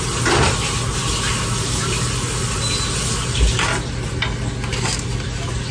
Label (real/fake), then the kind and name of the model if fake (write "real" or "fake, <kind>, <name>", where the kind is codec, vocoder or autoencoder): real